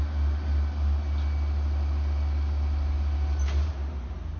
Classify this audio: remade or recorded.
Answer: recorded